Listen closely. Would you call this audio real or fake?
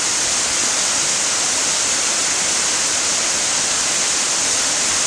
real